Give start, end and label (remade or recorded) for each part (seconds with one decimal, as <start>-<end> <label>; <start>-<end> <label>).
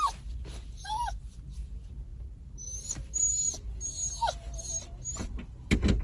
0.0-2.1 recorded; 2.1-2.9 remade; 2.9-6.0 recorded